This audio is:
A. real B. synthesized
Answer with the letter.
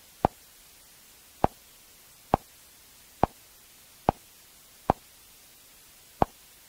A